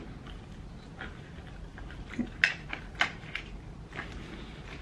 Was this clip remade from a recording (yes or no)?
no